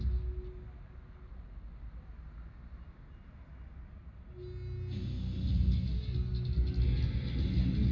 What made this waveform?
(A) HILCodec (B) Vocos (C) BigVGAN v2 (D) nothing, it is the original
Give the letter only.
D